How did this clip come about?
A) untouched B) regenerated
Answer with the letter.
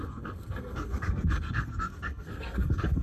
B